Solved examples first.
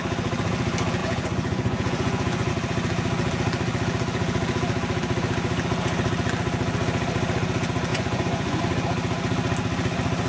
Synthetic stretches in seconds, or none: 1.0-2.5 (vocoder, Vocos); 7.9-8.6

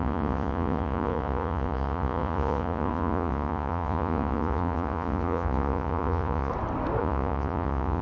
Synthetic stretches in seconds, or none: 0.0-6.5 (vocoder, Vocos); 7.0-8.0

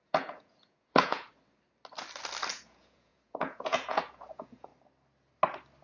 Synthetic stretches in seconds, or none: 0.0-1.3 (vocoder, Vocos); 2.5-4.7

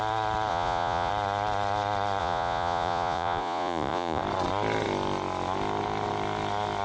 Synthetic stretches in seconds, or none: 0.5-1.1 (vocoder, Vocos); 2.2-4.2

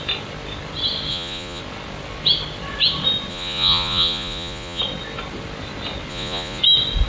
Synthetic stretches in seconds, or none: 1.1-1.6 (vocoder, Vocos); 3.3-4.8; 6.1-6.6

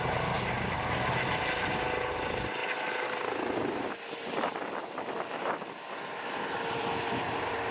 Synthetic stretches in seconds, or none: none